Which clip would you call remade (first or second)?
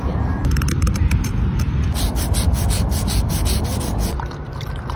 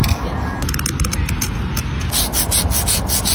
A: first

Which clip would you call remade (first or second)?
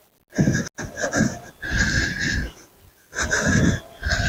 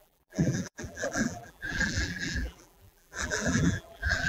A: second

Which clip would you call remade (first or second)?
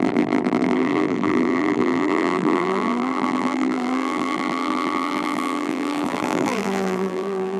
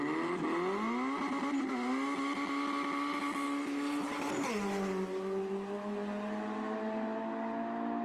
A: first